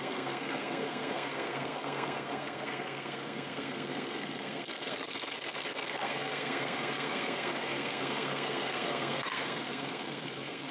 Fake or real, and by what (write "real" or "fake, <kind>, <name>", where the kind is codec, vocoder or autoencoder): fake, codec, SNAC